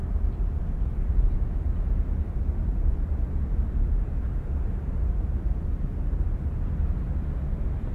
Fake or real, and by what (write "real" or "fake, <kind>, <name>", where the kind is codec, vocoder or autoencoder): real